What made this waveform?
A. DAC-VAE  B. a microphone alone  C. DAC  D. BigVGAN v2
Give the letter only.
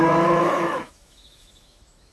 A